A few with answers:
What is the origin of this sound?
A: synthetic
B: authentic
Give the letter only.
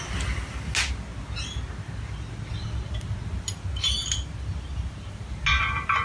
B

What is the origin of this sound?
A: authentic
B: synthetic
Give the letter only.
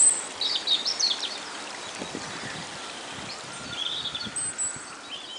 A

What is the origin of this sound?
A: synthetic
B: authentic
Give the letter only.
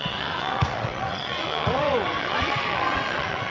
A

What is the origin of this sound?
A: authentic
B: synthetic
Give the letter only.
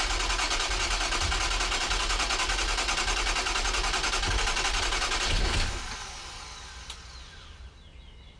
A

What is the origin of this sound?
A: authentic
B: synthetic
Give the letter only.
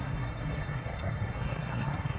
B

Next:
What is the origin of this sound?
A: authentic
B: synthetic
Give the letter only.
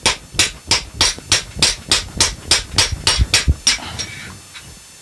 A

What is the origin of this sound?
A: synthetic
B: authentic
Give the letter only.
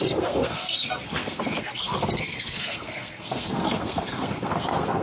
A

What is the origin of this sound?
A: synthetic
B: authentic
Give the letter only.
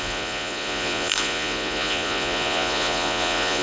A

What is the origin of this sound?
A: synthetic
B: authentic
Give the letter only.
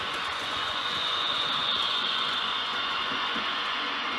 A